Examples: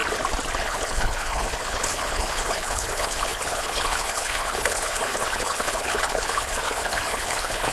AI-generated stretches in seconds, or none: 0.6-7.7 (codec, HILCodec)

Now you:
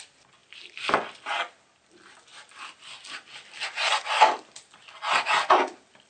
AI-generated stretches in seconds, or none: none